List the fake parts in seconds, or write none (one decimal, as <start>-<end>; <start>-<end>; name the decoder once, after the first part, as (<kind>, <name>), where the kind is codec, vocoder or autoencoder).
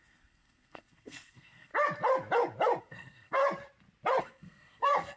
0.0-1.7 (codec, SNAC); 2.8-3.4; 4.2-5.2